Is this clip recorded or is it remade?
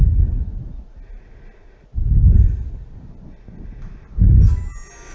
recorded